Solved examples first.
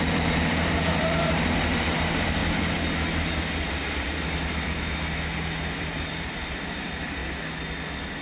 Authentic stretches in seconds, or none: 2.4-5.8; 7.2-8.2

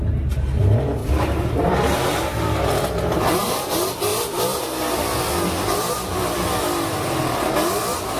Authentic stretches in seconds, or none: 0.0-1.0; 2.7-8.2